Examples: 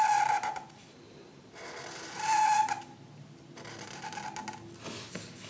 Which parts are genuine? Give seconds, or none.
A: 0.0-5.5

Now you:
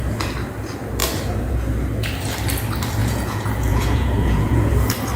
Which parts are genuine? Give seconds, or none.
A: 0.0-3.0; 4.7-5.2

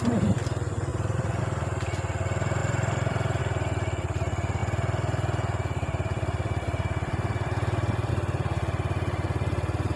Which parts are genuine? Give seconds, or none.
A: 0.0-0.9; 1.4-2.6; 3.4-4.6; 8.1-10.0

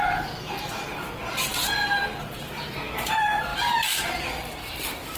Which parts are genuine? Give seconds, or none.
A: 0.0-3.5

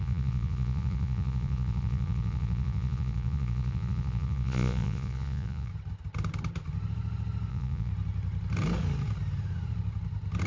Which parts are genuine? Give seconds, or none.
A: 5.7-7.5; 7.9-10.5

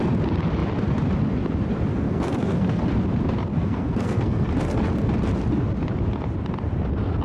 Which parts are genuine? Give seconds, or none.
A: 0.0-1.9; 2.8-3.5; 4.5-7.2

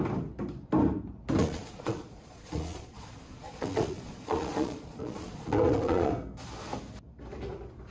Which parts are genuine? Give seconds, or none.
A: 0.0-1.4; 6.1-7.9